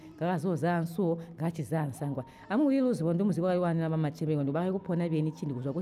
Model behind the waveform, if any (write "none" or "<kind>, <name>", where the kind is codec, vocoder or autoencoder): none